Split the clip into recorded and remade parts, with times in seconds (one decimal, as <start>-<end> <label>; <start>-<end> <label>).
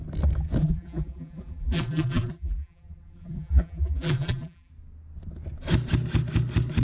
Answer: 0.0-0.6 recorded; 0.6-4.7 remade; 4.7-6.8 recorded